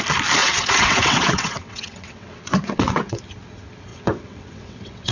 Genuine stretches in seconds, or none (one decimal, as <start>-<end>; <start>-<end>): 0.0-0.4; 3.2-3.9